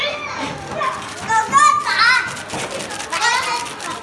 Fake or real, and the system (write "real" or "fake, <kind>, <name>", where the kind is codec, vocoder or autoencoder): real